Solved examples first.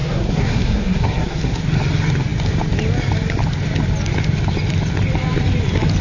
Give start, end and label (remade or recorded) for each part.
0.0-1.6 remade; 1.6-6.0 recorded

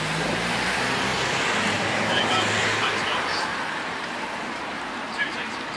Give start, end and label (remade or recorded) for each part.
0.0-3.5 recorded; 3.5-4.7 remade; 4.7-5.8 recorded

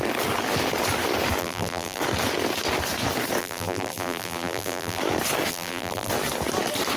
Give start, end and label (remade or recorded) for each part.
0.0-1.4 recorded; 1.4-2.0 remade; 2.0-3.4 recorded; 3.4-5.0 remade; 5.0-5.5 recorded; 5.5-6.1 remade; 6.1-7.0 recorded

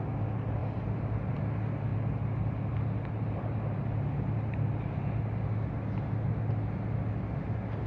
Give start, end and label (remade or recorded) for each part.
0.0-7.9 recorded

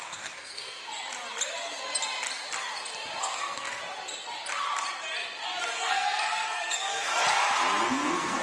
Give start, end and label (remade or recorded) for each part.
0.0-0.8 remade; 0.8-3.2 recorded; 3.2-3.8 remade; 3.8-5.7 recorded; 5.7-7.1 remade; 7.1-7.8 recorded; 7.8-8.4 remade

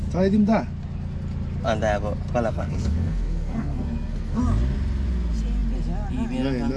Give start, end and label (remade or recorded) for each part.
0.0-2.5 recorded; 2.5-4.4 remade; 4.4-6.8 recorded

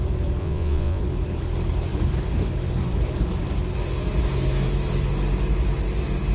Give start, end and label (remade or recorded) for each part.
0.0-0.4 recorded; 0.4-1.0 remade; 1.0-6.3 recorded

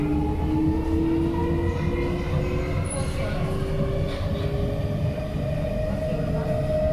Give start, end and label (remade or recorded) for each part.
0.0-6.9 recorded